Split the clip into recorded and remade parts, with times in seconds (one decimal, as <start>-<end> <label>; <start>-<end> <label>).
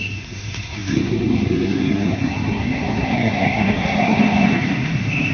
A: 0.0-5.3 remade